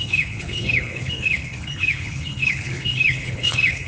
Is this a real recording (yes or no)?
no